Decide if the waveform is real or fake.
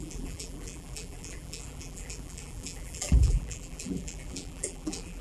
fake